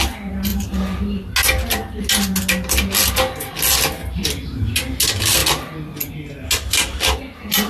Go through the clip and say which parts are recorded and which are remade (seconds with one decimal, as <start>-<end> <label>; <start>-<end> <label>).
0.0-7.7 recorded